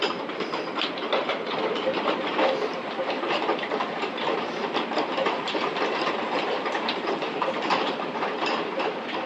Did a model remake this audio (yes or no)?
yes